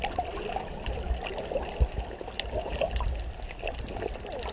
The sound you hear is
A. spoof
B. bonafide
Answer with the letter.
B